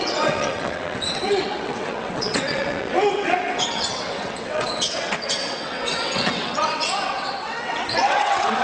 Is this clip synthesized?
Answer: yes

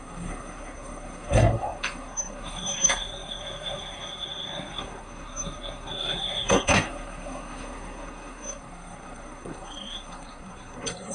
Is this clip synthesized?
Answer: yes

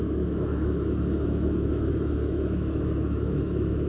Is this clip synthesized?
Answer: yes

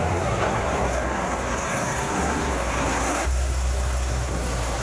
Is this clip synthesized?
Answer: yes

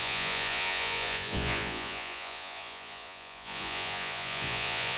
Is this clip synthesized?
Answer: yes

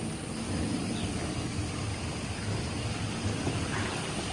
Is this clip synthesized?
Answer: no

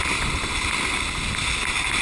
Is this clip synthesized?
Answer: no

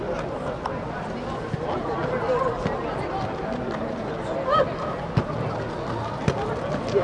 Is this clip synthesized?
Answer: no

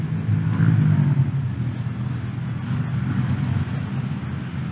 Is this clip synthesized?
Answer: no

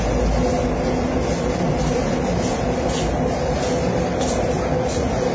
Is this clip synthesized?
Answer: no